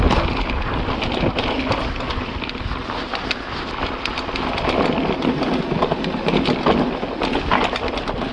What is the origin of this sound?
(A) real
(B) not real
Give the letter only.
A